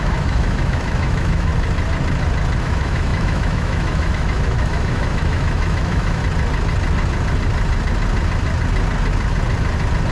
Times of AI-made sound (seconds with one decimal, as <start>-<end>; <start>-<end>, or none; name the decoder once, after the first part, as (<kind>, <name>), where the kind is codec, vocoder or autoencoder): 0.0-1.5 (autoencoder, DAC-VAE); 2.6-6.2